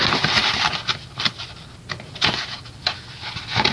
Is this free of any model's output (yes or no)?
yes